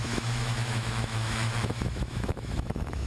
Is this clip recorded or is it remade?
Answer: remade